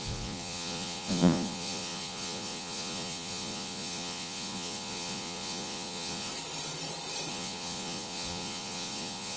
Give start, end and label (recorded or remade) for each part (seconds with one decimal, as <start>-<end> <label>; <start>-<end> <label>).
0.0-6.3 remade; 6.3-7.3 recorded; 7.3-9.4 remade